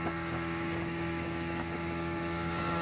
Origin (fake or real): fake